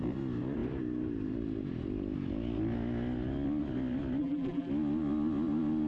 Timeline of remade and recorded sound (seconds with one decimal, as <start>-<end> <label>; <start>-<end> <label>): 0.0-4.2 recorded; 4.2-4.7 remade; 4.7-5.9 recorded